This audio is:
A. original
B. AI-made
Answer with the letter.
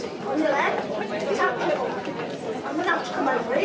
A